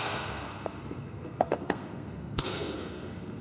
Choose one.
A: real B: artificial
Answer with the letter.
B